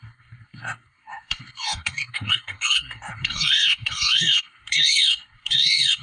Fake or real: fake